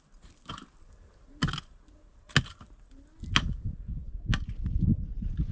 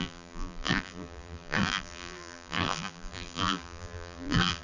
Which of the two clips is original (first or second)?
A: first